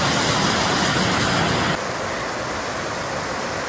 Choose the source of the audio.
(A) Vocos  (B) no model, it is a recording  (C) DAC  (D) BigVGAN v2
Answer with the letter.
B